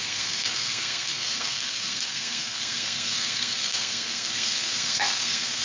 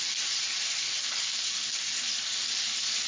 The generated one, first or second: first